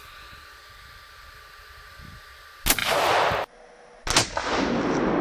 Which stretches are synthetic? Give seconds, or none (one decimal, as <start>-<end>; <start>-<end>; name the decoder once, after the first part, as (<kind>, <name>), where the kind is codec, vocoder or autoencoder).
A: none

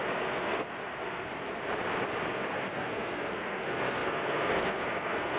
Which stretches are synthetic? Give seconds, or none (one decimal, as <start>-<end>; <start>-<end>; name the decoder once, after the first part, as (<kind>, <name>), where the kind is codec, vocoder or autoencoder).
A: 0.0-1.3 (codec, SNAC); 2.3-5.4

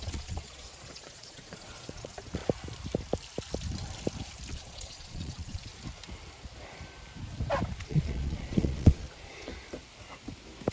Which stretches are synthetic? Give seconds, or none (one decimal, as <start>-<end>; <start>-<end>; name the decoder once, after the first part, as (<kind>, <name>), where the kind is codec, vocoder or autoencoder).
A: 0.0-2.4 (vocoder, Vocos); 4.5-5.7; 7.7-9.5

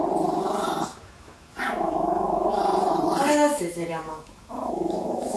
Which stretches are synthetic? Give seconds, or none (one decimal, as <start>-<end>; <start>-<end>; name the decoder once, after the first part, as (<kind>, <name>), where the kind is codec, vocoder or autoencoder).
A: 0.9-2.6 (autoencoder, DAC-VAE); 3.5-5.4

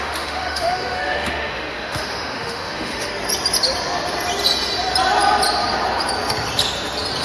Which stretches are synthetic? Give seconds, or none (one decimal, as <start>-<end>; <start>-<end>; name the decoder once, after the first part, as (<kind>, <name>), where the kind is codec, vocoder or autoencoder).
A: 0.0-3.1 (autoencoder, DAC-VAE)

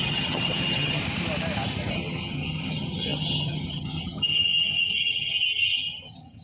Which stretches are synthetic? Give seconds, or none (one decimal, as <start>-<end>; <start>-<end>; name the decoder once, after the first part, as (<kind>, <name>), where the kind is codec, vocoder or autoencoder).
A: 0.0-1.0 (vocoder, HiFi-GAN); 1.9-6.4

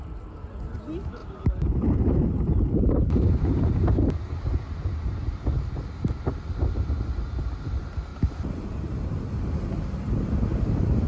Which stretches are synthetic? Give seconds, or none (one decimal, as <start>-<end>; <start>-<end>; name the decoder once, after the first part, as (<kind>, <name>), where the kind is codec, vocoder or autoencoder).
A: 1.2-4.1 (vocoder, BigVGAN v2); 8.1-9.0

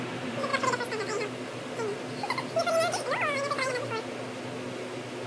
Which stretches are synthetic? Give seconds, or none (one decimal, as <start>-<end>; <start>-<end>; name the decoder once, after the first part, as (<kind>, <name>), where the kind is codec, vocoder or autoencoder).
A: none